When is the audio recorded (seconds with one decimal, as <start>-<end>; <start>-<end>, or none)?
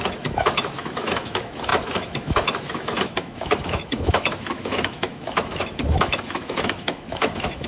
none